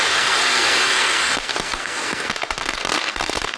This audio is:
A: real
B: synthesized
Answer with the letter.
B